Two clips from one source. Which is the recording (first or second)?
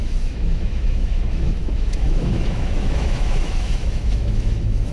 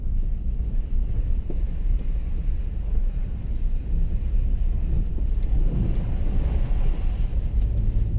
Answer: second